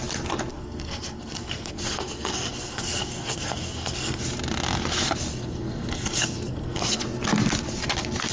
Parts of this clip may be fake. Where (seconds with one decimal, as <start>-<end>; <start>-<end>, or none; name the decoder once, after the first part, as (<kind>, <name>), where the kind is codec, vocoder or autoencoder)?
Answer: 0.5-4.2 (codec, SNAC); 5.3-7.0